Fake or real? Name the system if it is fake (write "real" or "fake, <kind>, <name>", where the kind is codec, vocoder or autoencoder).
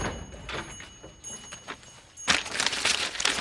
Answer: real